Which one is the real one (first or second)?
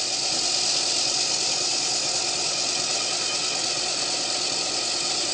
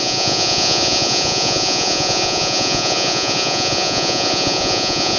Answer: first